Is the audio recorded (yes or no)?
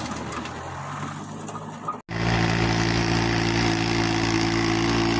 yes